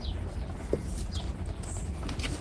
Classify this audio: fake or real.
real